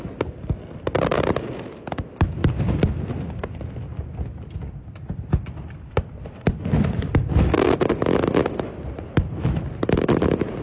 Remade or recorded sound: recorded